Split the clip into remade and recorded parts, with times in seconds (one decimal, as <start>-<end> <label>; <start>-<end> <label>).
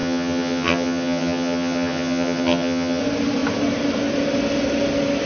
0.0-3.0 remade; 3.0-5.3 recorded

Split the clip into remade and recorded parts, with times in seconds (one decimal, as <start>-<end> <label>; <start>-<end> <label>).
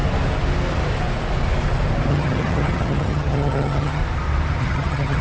0.0-2.1 recorded; 2.1-4.0 remade; 4.0-4.6 recorded; 4.6-5.2 remade